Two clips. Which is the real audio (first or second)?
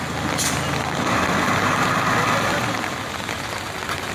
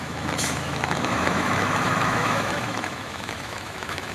first